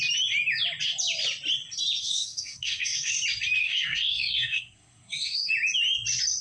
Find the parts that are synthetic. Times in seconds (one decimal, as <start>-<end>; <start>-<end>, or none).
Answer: 2.0-3.1; 3.6-5.5